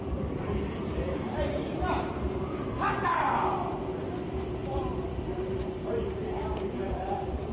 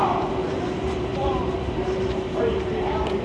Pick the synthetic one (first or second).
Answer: first